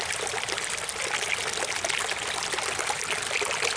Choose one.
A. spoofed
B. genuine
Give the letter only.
B